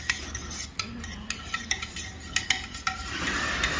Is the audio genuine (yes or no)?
yes